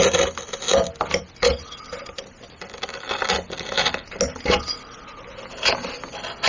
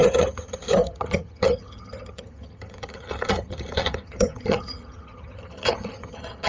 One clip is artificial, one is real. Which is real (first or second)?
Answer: first